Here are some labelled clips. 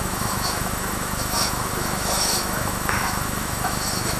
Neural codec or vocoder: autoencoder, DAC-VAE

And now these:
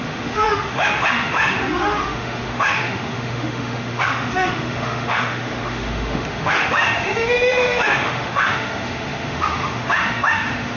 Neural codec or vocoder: autoencoder, DAC-VAE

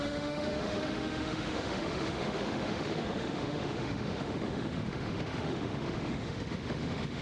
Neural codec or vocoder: autoencoder, DAC-VAE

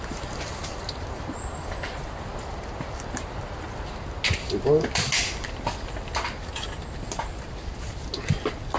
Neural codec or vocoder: none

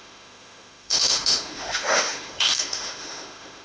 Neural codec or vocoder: autoencoder, DAC-VAE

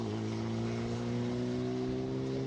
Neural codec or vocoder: none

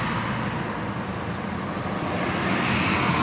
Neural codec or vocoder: none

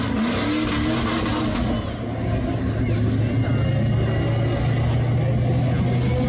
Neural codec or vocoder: none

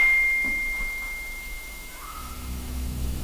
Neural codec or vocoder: autoencoder, DAC-VAE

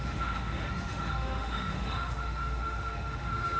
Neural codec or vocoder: autoencoder, DAC-VAE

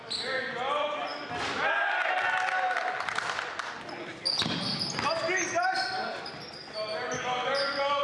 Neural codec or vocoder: none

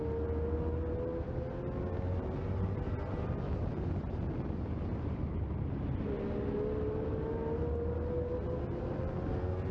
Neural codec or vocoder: none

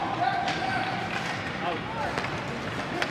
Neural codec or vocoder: none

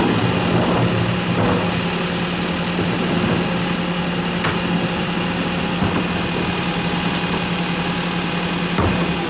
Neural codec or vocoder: none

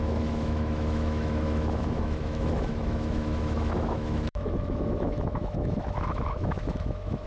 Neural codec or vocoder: autoencoder, DAC-VAE